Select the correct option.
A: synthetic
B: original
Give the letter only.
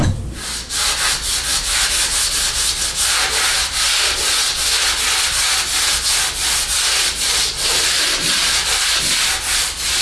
B